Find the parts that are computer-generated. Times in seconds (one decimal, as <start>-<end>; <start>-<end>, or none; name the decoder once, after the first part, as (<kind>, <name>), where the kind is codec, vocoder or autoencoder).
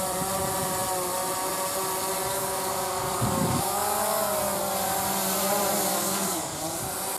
2.3-4.2 (codec, DAC); 5.9-6.6